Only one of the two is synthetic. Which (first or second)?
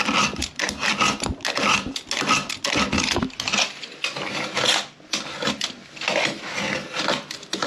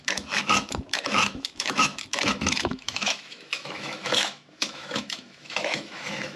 second